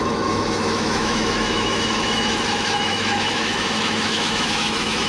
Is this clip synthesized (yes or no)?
yes